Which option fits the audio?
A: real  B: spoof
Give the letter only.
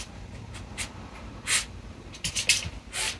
A